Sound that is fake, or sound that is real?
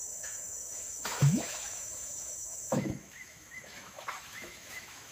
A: fake